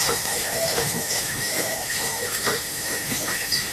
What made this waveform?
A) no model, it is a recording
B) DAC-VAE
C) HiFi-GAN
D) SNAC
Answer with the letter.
B